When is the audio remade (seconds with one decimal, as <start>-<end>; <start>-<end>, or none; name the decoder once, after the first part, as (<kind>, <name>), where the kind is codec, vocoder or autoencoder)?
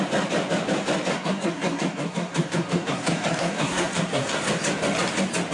1.1-4.4 (codec, SNAC)